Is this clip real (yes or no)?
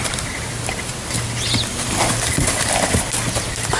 yes